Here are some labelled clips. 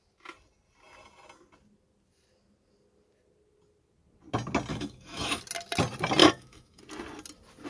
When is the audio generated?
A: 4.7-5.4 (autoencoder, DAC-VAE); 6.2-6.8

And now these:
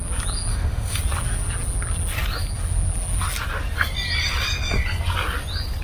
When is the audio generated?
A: 0.5-1.0 (autoencoder, DAC-VAE)

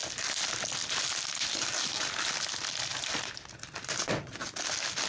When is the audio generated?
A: none

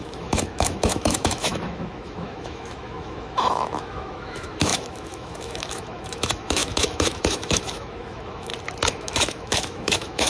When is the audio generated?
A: 0.0-8.5 (autoencoder, DAC-VAE); 9.0-10.3

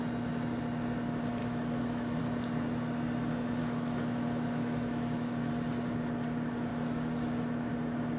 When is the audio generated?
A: 1.4-2.2 (autoencoder, DAC-VAE); 3.6-5.5; 6.7-7.7

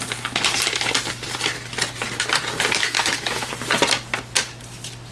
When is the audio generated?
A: 2.8-3.5 (autoencoder, DAC-VAE)

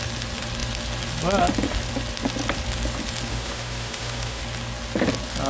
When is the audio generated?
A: 3.3-4.4 (autoencoder, DAC-VAE)